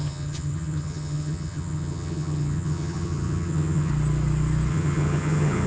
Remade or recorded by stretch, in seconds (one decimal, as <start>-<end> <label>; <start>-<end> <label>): 0.0-3.9 remade; 3.9-4.7 recorded; 4.7-5.7 remade